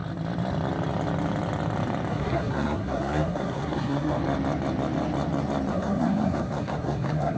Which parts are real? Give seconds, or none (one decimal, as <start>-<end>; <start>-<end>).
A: 0.0-2.1; 4.2-5.7